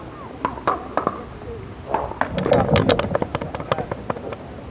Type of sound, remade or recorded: recorded